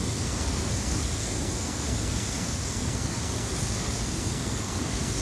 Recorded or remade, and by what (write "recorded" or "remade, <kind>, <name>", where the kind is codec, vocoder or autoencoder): remade, codec, SNAC